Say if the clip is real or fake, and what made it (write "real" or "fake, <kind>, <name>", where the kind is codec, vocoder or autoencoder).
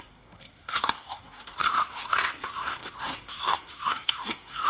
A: fake, codec, SNAC